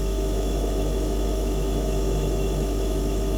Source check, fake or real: fake